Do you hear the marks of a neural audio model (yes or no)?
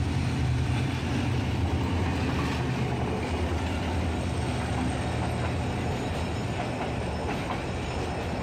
no